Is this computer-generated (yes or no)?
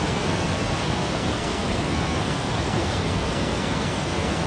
yes